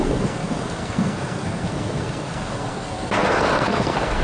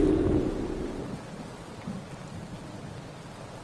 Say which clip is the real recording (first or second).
second